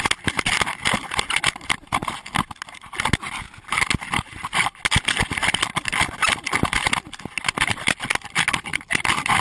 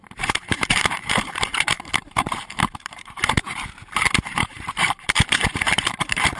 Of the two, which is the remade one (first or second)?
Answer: second